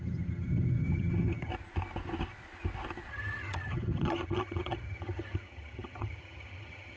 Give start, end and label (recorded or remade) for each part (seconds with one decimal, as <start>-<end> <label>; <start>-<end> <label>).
0.0-1.5 remade; 1.5-3.1 recorded; 3.1-7.0 remade